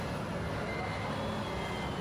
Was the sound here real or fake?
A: real